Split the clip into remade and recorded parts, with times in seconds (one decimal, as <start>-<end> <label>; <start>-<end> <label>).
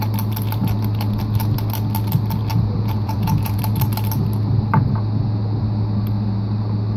0.0-2.5 recorded; 2.5-3.6 remade; 3.6-7.0 recorded